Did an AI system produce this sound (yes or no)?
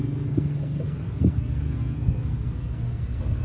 yes